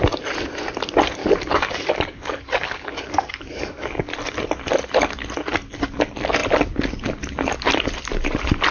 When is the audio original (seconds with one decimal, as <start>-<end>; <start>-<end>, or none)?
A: 0.0-1.2; 4.1-8.7